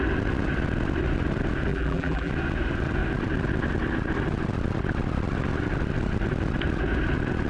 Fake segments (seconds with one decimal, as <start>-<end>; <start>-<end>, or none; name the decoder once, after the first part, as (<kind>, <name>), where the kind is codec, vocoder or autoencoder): 1.7-2.3 (vocoder, BigVGAN v2)